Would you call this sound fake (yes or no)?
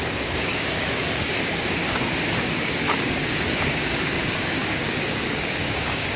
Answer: yes